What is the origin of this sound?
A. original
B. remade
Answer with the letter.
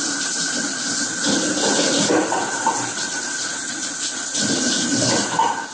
A